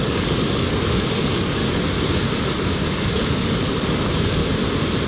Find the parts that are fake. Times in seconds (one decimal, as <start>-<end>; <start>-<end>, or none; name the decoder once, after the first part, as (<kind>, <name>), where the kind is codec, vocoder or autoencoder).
0.0-1.6 (codec, DAC); 2.6-4.4